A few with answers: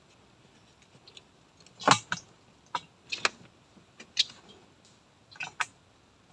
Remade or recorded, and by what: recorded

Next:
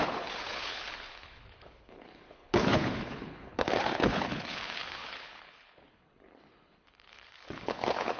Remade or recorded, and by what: remade, codec, HILCodec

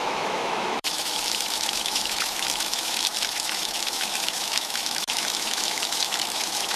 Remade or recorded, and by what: remade, autoencoder, DAC-VAE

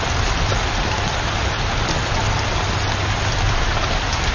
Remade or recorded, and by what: recorded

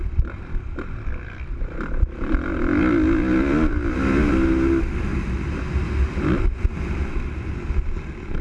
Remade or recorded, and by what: recorded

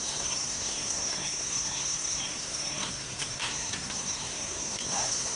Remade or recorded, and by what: remade, codec, SNAC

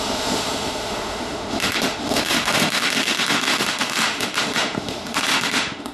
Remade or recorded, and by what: remade, autoencoder, DAC-VAE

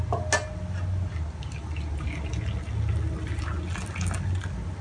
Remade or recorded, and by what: recorded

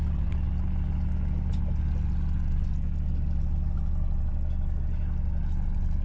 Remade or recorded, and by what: recorded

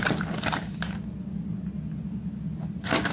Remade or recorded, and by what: recorded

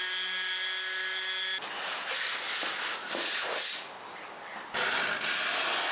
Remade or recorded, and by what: recorded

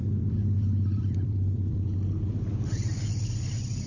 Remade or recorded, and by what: remade, vocoder, BigVGAN v2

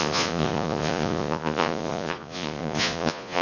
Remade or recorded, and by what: remade, vocoder, Vocos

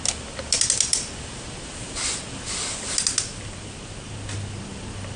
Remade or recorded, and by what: recorded